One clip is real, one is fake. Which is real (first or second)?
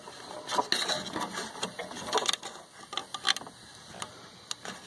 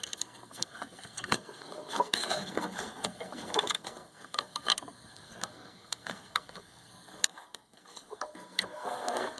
first